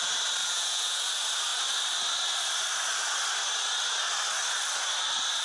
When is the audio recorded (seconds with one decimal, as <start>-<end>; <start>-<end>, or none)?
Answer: 0.0-0.4; 1.0-5.4